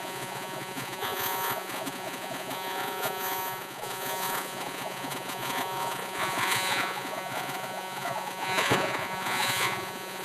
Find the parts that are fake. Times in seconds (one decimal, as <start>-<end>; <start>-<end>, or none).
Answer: 0.0-10.2